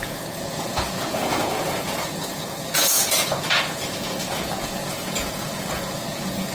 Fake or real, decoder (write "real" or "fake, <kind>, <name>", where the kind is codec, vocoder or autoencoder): fake, vocoder, Vocos